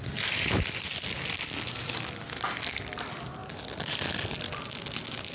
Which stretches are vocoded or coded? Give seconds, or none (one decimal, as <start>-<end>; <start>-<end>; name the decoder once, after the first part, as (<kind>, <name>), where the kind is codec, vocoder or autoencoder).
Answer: none